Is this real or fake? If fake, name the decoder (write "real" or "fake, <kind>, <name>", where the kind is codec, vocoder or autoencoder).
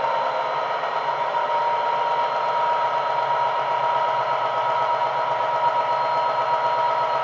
real